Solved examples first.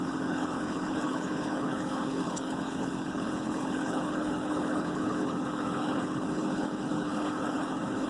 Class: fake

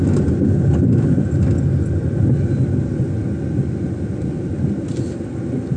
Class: real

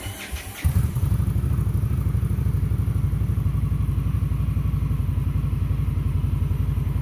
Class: real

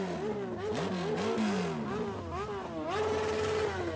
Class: real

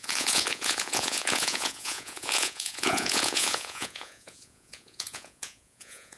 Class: fake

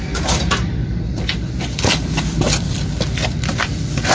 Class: fake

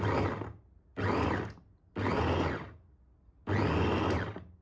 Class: real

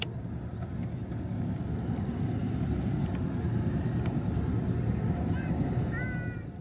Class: real